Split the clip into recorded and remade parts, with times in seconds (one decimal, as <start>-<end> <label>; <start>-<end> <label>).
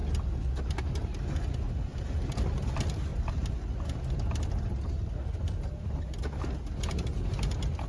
0.0-3.1 recorded; 3.1-3.7 remade; 3.7-7.9 recorded